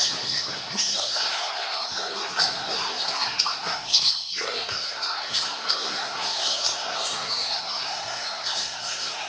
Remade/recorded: remade